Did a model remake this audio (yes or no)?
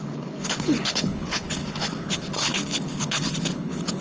yes